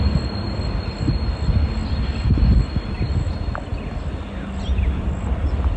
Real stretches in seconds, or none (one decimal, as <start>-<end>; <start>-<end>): 0.0-5.8